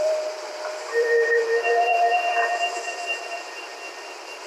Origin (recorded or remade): remade